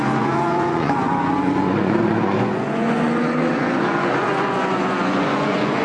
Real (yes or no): no